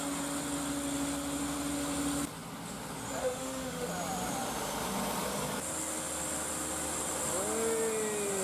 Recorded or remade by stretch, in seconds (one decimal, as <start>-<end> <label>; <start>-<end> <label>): 0.0-3.2 recorded; 3.2-3.9 remade; 3.9-8.4 recorded